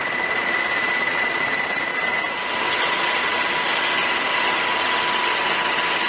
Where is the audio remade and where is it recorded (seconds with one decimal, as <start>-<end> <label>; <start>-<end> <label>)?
0.0-1.9 remade; 1.9-2.8 recorded; 2.8-3.4 remade; 3.4-6.1 recorded

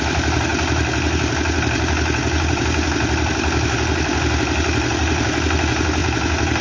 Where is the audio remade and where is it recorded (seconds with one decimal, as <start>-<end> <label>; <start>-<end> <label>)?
0.0-6.6 recorded

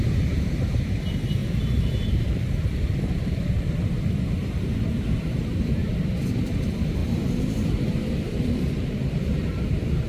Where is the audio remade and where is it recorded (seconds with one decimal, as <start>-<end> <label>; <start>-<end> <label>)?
0.0-5.8 remade; 5.8-6.3 recorded; 6.3-10.1 remade

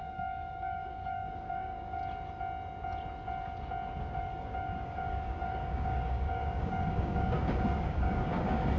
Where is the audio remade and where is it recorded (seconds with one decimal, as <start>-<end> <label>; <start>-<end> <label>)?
0.0-2.0 remade; 2.0-4.2 recorded; 4.2-8.8 remade

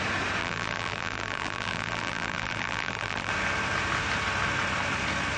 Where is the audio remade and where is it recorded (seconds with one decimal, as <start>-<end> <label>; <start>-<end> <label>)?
0.0-0.4 recorded; 0.4-3.3 remade; 3.3-5.4 recorded

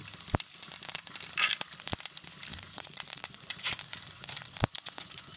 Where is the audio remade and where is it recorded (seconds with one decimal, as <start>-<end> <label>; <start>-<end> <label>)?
0.0-2.5 recorded; 2.5-5.4 remade

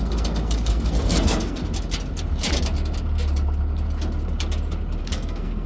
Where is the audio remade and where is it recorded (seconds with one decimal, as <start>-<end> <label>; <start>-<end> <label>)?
0.0-1.6 remade; 1.6-5.0 recorded; 5.0-5.7 remade